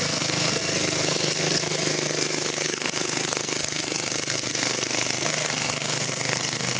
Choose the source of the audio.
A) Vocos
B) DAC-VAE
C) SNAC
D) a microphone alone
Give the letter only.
C